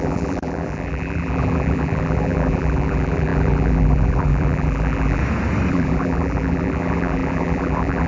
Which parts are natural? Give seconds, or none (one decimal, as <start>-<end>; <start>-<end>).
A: 5.2-5.7